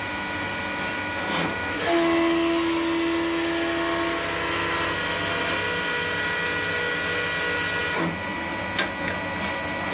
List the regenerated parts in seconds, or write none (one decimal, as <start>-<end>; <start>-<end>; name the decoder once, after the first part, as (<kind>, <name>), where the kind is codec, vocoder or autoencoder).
none